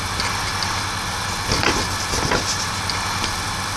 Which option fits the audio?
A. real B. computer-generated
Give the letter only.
A